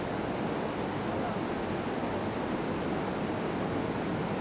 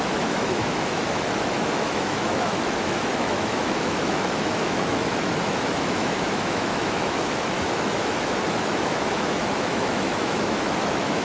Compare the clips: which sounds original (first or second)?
first